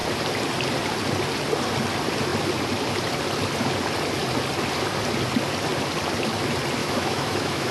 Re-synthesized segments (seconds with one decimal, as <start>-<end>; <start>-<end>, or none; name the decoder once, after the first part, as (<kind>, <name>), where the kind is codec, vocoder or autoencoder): 6.8-7.7 (autoencoder, DAC-VAE)